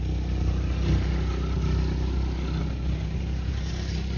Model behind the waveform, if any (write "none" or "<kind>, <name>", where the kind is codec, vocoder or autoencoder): none